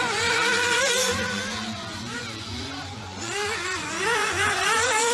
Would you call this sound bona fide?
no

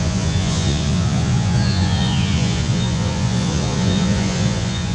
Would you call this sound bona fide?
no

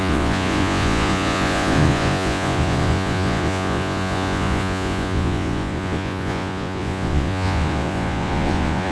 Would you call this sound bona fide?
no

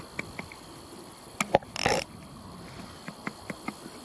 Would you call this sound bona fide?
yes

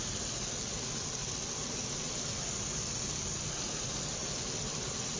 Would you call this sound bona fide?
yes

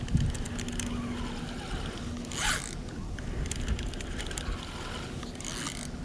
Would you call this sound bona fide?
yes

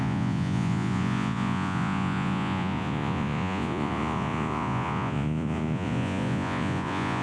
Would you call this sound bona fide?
no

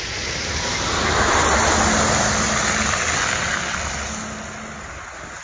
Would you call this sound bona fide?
yes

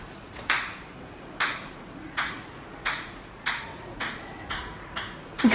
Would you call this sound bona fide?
no